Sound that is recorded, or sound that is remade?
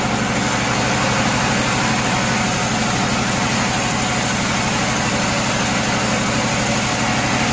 recorded